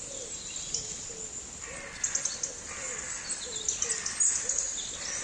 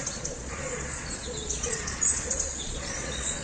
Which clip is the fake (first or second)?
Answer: second